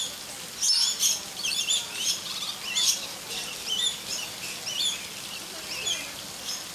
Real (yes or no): yes